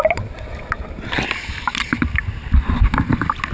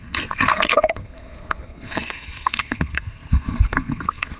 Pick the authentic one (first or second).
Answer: first